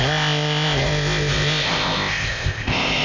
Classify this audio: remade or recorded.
remade